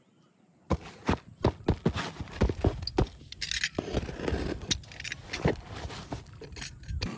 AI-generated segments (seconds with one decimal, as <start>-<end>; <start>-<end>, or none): none